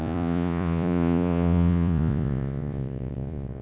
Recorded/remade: remade